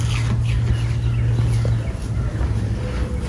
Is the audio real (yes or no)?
yes